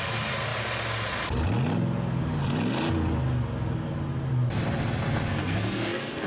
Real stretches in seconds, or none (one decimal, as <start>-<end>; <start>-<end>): 0.0-5.3